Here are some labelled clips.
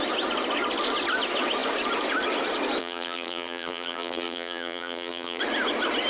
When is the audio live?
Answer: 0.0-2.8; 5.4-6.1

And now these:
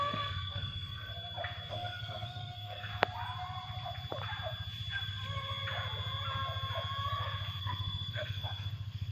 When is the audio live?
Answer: 1.1-1.7; 2.9-7.6

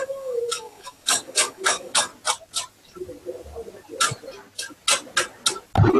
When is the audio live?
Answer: 2.1-6.0

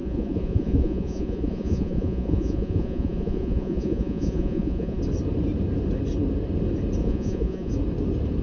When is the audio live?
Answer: 5.0-7.0; 7.7-8.4